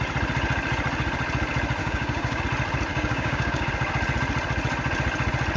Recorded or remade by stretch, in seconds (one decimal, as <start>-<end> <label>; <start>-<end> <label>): 0.0-1.8 recorded; 1.8-2.4 remade; 2.4-2.9 recorded; 2.9-3.7 remade; 3.7-5.6 recorded